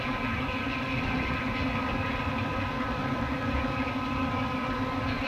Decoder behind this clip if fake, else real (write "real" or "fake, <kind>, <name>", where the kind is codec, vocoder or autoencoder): real